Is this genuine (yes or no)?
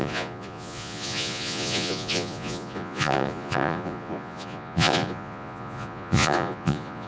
no